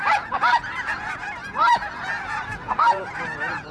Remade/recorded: remade